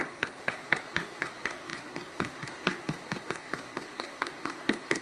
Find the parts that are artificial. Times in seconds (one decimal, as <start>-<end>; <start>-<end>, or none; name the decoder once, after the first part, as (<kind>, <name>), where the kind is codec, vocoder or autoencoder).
0.0-5.0 (codec, SNAC)